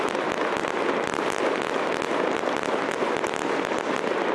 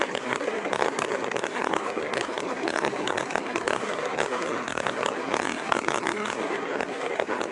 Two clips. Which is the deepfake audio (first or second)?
second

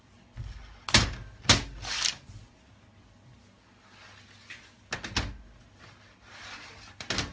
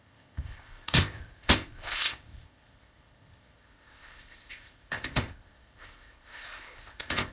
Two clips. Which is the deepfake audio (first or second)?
second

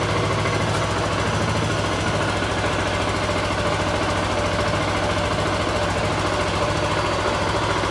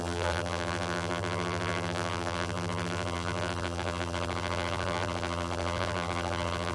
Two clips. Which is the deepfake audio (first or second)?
second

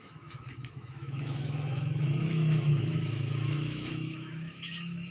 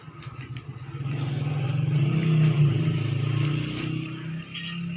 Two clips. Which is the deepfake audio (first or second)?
first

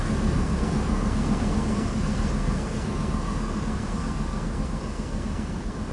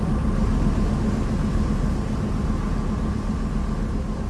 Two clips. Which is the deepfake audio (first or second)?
first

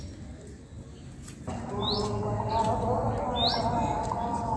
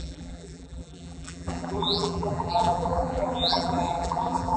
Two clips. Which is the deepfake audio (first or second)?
second